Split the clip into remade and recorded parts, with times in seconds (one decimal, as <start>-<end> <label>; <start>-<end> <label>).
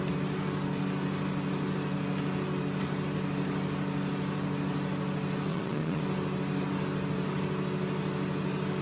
0.0-5.5 recorded; 5.5-6.0 remade; 6.0-8.8 recorded